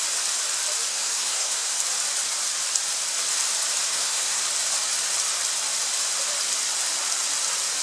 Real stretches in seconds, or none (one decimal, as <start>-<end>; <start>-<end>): 0.0-0.9; 1.8-3.9; 4.4-7.8